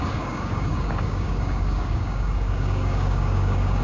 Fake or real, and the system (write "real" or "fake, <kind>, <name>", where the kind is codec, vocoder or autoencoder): fake, codec, DAC